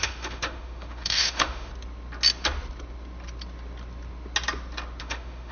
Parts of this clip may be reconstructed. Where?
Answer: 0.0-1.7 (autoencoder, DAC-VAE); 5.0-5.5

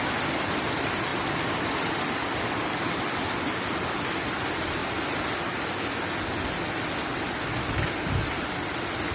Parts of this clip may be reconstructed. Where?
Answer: 0.0-1.1 (vocoder, BigVGAN v2); 3.1-4.8; 8.2-9.1

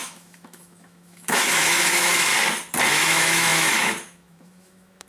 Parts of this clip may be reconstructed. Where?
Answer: 0.0-2.3 (autoencoder, DAC-VAE); 2.9-5.1

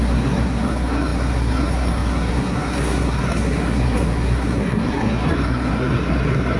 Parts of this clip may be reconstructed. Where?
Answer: 0.0-6.6 (codec, SNAC)

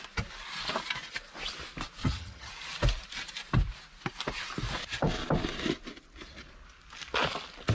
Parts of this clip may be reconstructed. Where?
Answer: 2.0-2.5 (vocoder, HiFi-GAN)

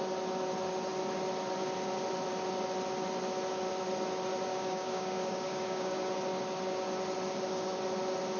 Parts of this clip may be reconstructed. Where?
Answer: 4.5-6.1 (codec, DAC)

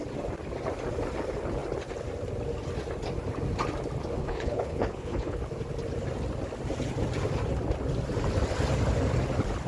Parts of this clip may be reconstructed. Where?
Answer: 4.2-5.4 (codec, HILCodec)

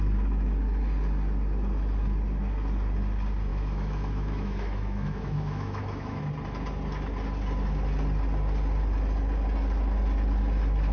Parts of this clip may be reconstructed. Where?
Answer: 3.5-6.2 (autoencoder, DAC-VAE)